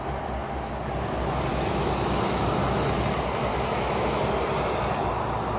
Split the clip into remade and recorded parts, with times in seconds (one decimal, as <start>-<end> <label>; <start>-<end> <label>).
0.0-1.5 recorded; 1.5-2.4 remade; 2.4-3.5 recorded; 3.5-4.2 remade; 4.2-5.6 recorded